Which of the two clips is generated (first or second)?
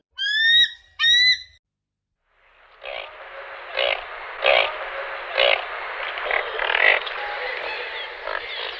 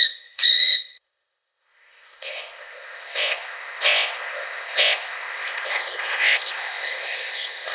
second